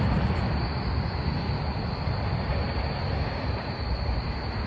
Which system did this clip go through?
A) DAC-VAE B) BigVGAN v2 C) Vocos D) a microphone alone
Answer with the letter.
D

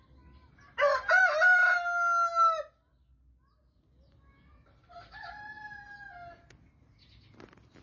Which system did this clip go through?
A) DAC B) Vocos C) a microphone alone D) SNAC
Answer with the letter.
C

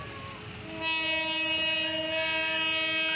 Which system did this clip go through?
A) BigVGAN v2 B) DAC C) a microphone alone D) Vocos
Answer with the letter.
C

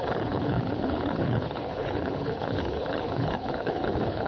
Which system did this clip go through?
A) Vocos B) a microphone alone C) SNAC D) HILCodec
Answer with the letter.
D